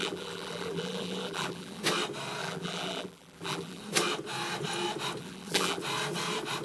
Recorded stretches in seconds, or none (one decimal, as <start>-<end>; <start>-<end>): 1.8-2.4; 3.8-5.2; 5.8-6.6